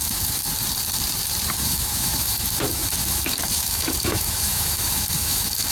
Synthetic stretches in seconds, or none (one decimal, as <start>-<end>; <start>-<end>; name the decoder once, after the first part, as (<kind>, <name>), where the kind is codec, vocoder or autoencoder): 0.0-0.4 (autoencoder, DAC-VAE); 1.5-5.7